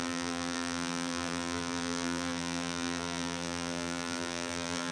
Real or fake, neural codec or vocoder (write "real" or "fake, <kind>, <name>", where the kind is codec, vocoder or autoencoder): fake, vocoder, BigVGAN v2